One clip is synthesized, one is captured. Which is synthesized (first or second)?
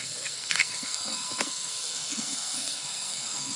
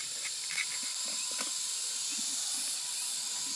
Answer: first